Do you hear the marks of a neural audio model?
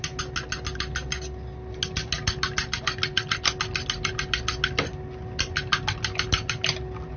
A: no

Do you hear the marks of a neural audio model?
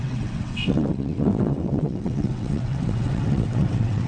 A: yes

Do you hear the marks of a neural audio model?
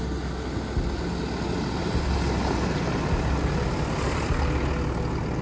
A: no